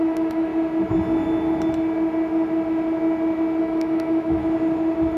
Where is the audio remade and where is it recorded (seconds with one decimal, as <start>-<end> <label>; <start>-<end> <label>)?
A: 0.0-0.5 remade; 0.5-3.6 recorded; 3.6-4.4 remade; 4.4-5.2 recorded